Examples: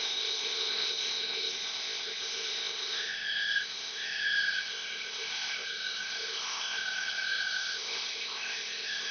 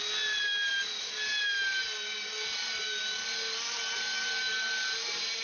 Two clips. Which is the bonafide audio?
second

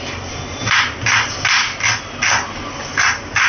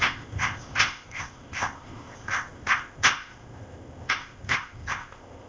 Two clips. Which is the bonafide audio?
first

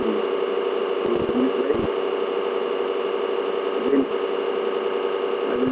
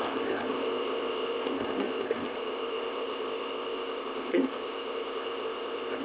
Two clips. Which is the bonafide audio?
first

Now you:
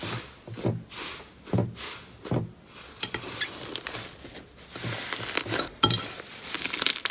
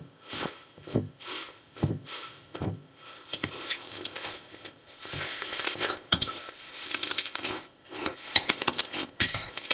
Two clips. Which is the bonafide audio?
first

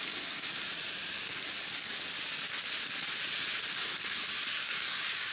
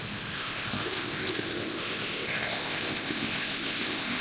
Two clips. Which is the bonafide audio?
first